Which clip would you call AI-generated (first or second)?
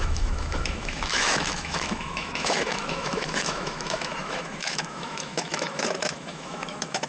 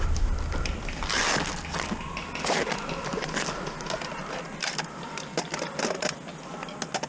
first